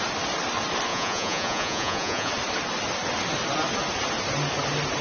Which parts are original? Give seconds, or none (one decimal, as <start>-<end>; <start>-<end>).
0.0-0.9; 2.3-5.0